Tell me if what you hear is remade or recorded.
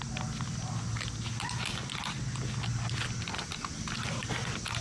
recorded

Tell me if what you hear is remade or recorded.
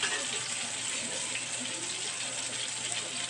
recorded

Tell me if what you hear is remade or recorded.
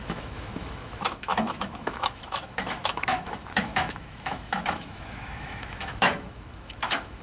remade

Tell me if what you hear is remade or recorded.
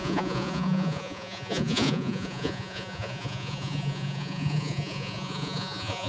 remade